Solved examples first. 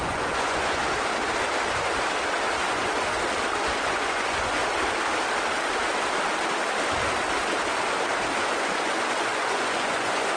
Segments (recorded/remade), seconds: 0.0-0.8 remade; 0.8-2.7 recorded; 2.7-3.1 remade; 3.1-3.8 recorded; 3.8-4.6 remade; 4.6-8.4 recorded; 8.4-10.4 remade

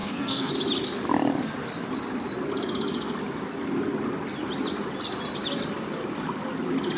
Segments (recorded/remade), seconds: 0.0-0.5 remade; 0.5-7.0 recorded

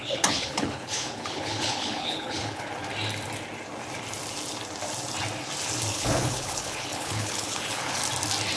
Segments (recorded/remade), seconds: 0.0-2.7 remade; 2.7-5.9 recorded; 5.9-8.0 remade; 8.0-8.6 recorded

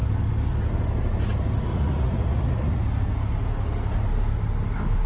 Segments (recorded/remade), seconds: 0.0-1.7 recorded; 1.7-2.8 remade; 2.8-5.1 recorded

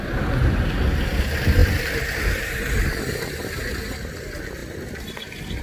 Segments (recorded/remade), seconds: 0.0-5.6 recorded